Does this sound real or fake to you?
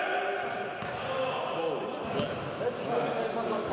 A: real